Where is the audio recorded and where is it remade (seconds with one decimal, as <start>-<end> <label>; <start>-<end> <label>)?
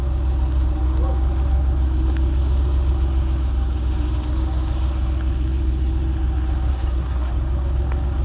0.0-6.7 recorded; 6.7-7.3 remade; 7.3-8.2 recorded